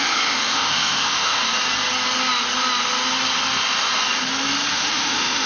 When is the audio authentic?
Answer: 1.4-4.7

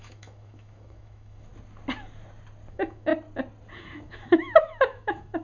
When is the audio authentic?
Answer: 1.5-2.7; 3.1-3.8

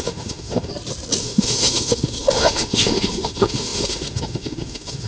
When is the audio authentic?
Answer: 0.7-1.2

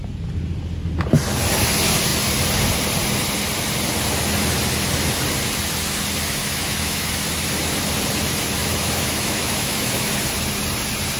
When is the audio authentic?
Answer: 0.0-6.4; 7.1-8.6; 10.2-11.2